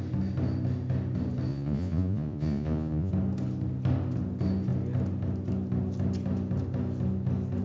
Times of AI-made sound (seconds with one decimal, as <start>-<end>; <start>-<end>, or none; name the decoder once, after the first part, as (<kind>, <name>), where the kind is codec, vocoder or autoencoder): 1.5-3.1 (vocoder, Vocos)

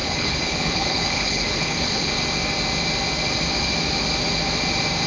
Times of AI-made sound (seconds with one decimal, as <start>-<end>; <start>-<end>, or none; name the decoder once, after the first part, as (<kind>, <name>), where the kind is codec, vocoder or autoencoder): 0.0-2.1 (codec, HILCodec)

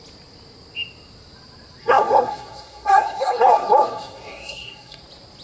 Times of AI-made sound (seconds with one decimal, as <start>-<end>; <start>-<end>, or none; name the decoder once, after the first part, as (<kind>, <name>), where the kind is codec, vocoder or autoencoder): 1.8-5.0 (codec, SNAC)

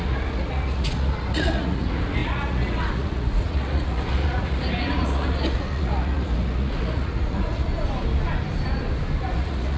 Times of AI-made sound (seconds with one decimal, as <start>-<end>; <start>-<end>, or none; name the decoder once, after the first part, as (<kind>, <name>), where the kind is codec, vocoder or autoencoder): 0.0-7.7 (vocoder, Vocos); 9.2-9.8

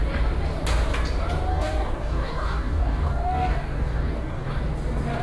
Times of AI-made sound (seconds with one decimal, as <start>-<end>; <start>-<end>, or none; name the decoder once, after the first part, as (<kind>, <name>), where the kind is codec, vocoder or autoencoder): 1.5-4.6 (codec, DAC)

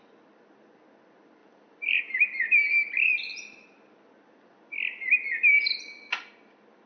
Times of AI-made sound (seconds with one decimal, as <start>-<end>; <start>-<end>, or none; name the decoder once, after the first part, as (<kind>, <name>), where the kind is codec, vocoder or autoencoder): 1.4-4.1 (vocoder, BigVGAN v2)

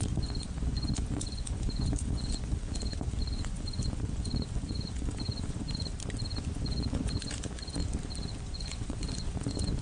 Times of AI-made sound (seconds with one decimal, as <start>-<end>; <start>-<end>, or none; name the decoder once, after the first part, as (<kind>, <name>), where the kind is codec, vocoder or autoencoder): 0.0-5.9 (vocoder, Vocos); 6.4-7.8; 8.4-9.8

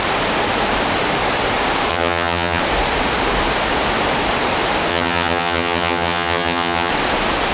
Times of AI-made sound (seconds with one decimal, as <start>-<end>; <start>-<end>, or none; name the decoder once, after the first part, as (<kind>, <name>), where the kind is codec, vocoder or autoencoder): 1.9-2.6 (vocoder, HiFi-GAN); 4.9-6.9